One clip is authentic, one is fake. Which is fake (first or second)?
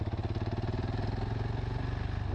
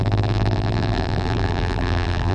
second